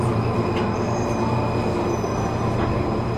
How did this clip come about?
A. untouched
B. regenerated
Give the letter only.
B